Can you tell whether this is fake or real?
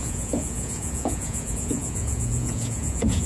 fake